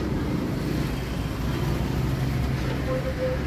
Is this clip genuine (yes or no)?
yes